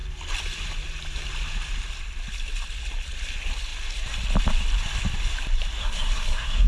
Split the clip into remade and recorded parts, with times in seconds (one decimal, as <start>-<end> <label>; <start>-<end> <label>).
0.0-5.8 recorded; 5.8-6.7 remade